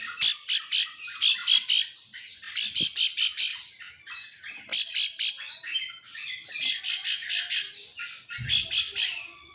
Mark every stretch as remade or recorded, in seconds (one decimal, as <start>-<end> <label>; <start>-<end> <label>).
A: 0.0-3.5 recorded; 3.5-6.8 remade; 6.8-9.5 recorded